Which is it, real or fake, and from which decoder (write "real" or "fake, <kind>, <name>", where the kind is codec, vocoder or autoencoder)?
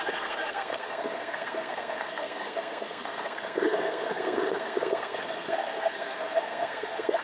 fake, codec, SNAC